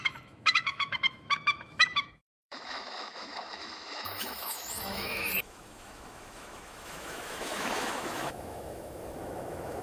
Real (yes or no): no